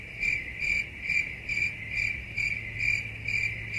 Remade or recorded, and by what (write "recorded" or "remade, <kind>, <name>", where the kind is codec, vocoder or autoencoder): recorded